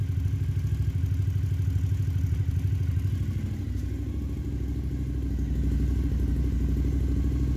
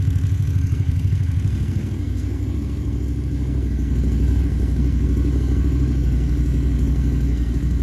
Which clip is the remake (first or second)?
second